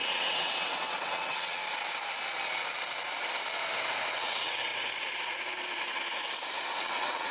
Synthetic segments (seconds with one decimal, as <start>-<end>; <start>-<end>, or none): 0.0-1.6; 4.1-4.7; 6.8-7.3